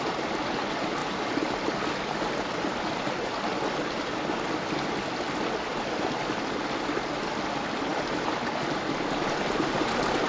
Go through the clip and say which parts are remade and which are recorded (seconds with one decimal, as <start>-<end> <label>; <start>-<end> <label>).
0.0-10.3 recorded

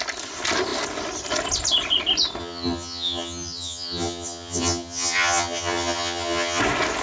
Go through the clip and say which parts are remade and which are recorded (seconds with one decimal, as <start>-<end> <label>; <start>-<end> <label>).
0.0-2.4 recorded; 2.4-6.6 remade; 6.6-7.0 recorded

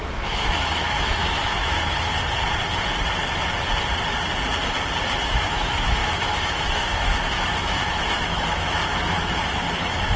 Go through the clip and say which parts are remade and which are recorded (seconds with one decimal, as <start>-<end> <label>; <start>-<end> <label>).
0.0-2.1 remade; 2.1-5.2 recorded; 5.2-10.2 remade

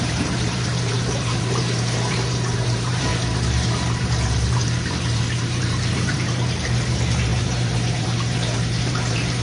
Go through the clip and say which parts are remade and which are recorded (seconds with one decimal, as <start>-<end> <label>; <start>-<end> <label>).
0.0-3.1 remade; 3.1-4.0 recorded; 4.0-9.4 remade

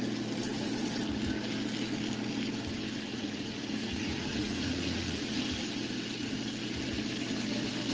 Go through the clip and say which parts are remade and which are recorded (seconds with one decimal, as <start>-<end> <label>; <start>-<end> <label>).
0.0-3.1 recorded; 3.1-5.4 remade; 5.4-7.9 recorded

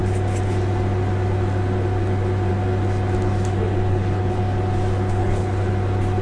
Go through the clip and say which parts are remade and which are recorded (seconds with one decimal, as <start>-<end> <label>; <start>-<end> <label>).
0.0-3.9 recorded; 3.9-4.4 remade; 4.4-5.2 recorded; 5.2-5.7 remade; 5.7-6.2 recorded

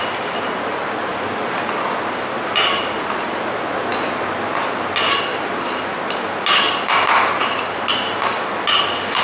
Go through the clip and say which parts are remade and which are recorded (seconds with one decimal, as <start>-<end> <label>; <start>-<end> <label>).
0.0-9.2 recorded